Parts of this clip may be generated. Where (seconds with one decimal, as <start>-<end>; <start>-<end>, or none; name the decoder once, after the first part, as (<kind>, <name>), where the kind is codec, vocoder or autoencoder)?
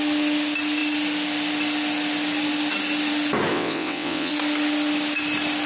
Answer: 3.5-4.3 (vocoder, WaveNeXt)